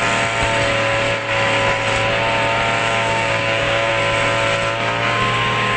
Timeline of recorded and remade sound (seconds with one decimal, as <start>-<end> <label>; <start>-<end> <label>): 0.0-2.8 recorded; 2.8-3.9 remade; 3.9-5.0 recorded; 5.0-5.8 remade